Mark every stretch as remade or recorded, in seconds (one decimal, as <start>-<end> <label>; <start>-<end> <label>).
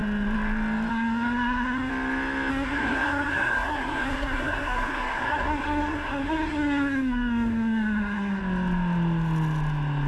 0.0-0.9 recorded; 0.9-1.9 remade; 1.9-2.5 recorded; 2.5-8.4 remade; 8.4-10.1 recorded